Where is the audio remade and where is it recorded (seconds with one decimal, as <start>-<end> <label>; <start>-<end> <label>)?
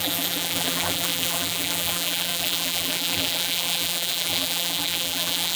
0.0-5.6 remade